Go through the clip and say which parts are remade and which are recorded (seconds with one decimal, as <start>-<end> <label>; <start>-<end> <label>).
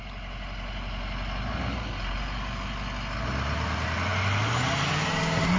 0.0-5.6 recorded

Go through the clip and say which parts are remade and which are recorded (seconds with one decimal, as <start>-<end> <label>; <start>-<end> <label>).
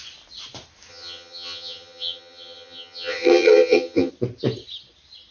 0.0-0.9 recorded; 0.9-4.1 remade; 4.1-5.3 recorded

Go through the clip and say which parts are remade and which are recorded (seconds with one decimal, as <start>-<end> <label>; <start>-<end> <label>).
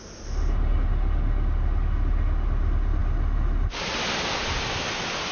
0.0-5.3 recorded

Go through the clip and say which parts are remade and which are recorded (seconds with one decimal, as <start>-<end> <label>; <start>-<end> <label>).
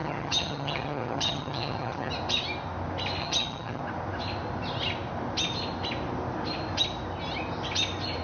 0.0-2.1 remade; 2.1-3.2 recorded; 3.2-3.8 remade; 3.8-8.2 recorded